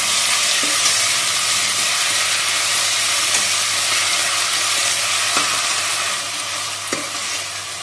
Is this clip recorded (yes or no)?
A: yes